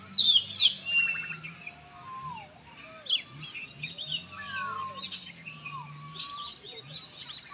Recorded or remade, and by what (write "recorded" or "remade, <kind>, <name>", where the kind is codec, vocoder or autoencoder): recorded